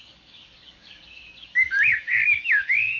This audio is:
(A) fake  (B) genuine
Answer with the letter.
A